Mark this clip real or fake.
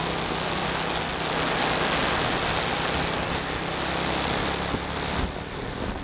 real